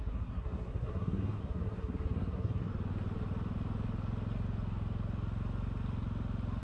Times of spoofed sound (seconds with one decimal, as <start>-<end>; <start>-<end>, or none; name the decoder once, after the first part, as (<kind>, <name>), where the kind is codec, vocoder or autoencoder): 0.0-2.7 (codec, SNAC)